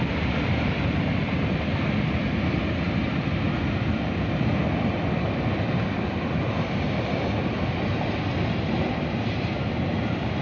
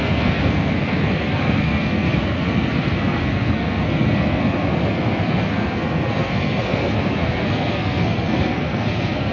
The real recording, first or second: first